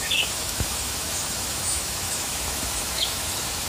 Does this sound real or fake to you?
fake